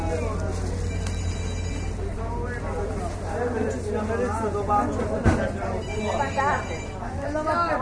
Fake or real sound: real